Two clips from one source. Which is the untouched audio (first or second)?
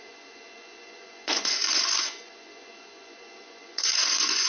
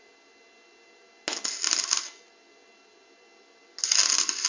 second